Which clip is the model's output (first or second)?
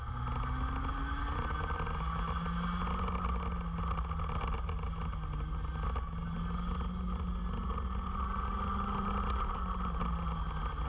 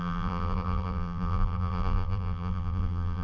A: second